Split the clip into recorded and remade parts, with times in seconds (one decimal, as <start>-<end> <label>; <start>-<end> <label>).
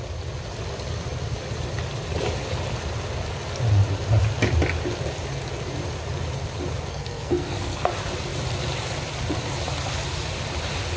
0.0-6.9 recorded; 6.9-7.9 remade; 7.9-11.0 recorded